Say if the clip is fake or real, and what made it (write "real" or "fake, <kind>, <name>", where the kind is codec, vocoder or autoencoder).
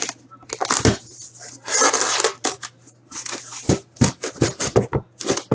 real